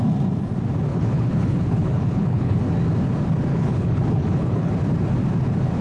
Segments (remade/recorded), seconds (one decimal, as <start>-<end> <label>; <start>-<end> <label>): 0.0-0.9 recorded; 0.9-2.6 remade; 2.6-3.5 recorded; 3.5-4.7 remade; 4.7-5.8 recorded